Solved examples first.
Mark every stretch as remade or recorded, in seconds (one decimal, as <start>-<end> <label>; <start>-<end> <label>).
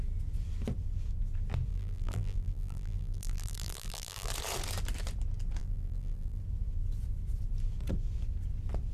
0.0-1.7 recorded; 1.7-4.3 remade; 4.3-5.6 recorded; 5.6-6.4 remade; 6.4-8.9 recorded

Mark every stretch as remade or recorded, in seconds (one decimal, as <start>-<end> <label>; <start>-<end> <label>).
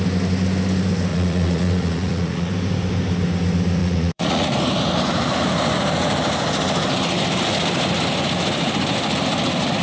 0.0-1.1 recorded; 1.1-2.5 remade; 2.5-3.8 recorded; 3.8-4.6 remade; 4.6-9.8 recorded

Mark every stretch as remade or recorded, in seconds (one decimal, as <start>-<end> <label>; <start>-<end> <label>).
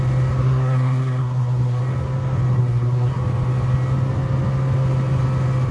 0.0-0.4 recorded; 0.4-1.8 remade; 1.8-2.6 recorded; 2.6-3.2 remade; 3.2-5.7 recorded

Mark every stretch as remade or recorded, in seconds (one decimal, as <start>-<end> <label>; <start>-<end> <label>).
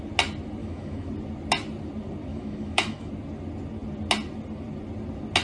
0.0-0.6 recorded; 0.6-1.1 remade; 1.1-2.3 recorded; 2.3-3.1 remade; 3.1-5.4 recorded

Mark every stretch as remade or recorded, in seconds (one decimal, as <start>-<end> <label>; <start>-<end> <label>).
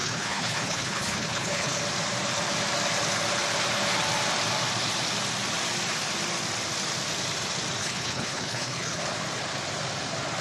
0.0-1.8 remade; 1.8-7.8 recorded; 7.8-9.0 remade; 9.0-10.4 recorded